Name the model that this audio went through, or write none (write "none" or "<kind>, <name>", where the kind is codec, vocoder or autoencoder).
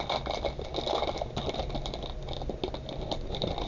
none